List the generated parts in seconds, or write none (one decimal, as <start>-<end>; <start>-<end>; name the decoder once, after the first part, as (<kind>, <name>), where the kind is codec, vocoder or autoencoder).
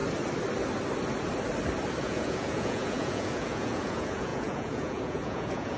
2.0-5.8 (vocoder, Vocos)